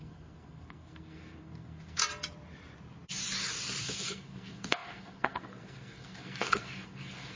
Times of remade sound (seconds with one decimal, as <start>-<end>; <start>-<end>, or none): 0.0-2.0; 3.8-7.4